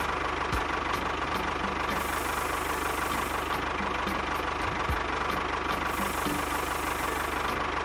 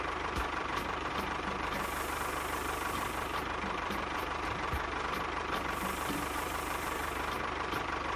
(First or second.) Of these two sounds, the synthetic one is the second